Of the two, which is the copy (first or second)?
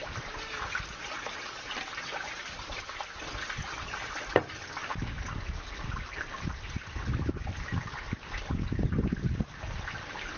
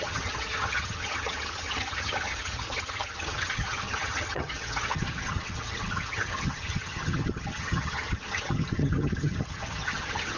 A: second